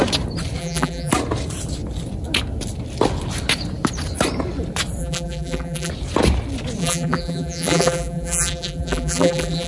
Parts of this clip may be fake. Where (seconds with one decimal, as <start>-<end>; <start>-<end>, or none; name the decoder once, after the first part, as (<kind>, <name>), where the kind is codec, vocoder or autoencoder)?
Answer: 0.6-1.1 (vocoder, BigVGAN v2); 5.0-5.9; 6.8-9.7